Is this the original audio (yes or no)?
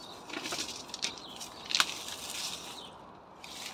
yes